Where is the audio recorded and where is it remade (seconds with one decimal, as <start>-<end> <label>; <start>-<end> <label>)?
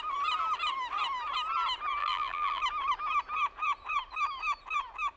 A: 0.0-2.0 recorded; 2.0-2.6 remade; 2.6-5.2 recorded